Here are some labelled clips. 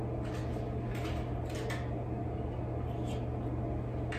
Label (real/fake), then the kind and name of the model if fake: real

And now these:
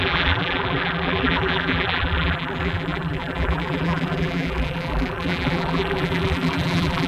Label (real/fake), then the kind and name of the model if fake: fake, vocoder, BigVGAN v2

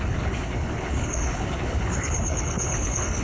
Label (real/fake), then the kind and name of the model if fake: fake, codec, HILCodec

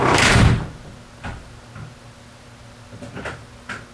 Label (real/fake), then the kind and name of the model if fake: real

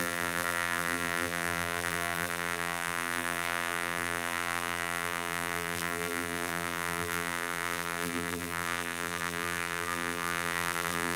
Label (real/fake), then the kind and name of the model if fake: fake, vocoder, BigVGAN v2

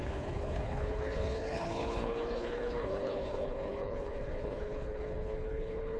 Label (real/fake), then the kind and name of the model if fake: fake, codec, HILCodec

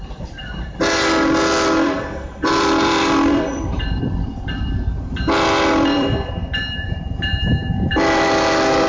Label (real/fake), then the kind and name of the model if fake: fake, vocoder, BigVGAN v2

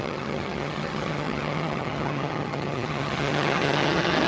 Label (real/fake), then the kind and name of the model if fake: fake, vocoder, HiFi-GAN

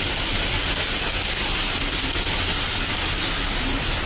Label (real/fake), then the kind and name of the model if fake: real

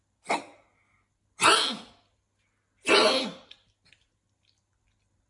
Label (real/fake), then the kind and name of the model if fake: real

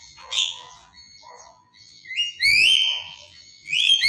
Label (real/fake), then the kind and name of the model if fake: fake, vocoder, BigVGAN v2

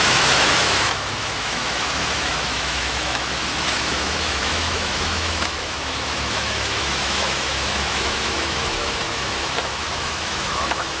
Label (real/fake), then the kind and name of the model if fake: fake, autoencoder, DAC-VAE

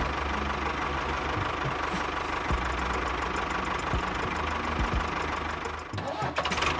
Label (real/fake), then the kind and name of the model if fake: real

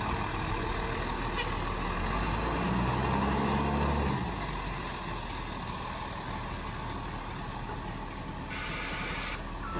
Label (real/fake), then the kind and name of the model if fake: real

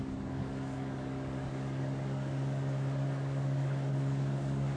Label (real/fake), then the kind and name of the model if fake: fake, codec, DAC